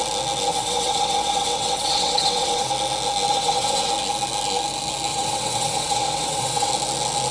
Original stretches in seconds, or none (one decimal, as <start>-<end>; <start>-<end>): 0.0-0.5; 2.7-3.3; 3.9-5.1; 6.7-7.3